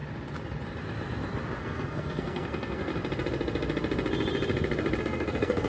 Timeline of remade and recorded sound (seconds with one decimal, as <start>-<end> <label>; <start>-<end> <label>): 0.0-1.6 recorded; 1.6-2.9 remade; 2.9-5.0 recorded; 5.0-5.7 remade